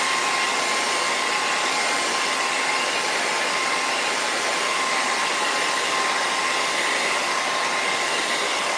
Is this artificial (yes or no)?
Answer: no